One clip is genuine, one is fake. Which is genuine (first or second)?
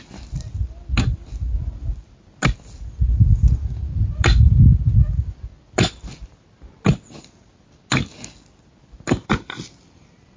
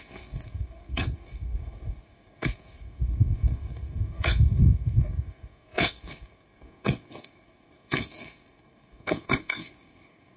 first